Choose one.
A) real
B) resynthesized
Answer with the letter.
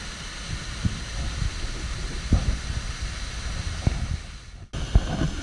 A